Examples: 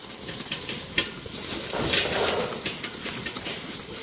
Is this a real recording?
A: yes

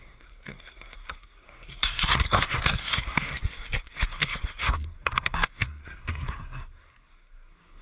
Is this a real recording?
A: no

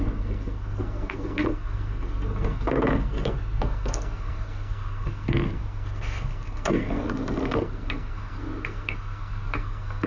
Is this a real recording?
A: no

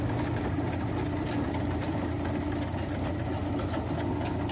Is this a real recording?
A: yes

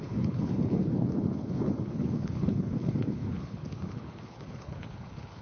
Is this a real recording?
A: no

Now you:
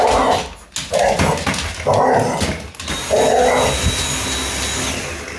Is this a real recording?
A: yes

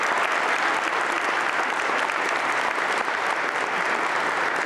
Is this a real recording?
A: yes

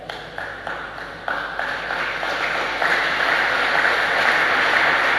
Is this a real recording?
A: yes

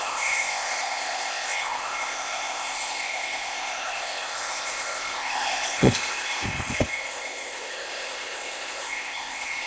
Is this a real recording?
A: no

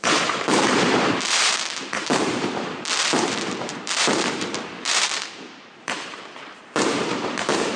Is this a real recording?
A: no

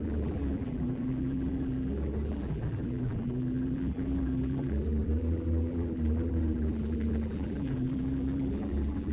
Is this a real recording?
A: no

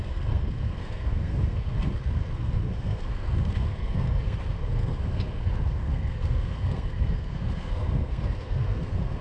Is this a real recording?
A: no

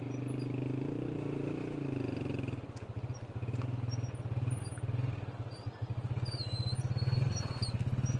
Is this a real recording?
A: yes